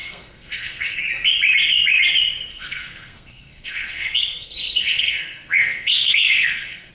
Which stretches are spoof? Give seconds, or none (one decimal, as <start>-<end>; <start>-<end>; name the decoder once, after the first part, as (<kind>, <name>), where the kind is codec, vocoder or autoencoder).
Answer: 0.0-1.0 (codec, SNAC); 2.5-6.9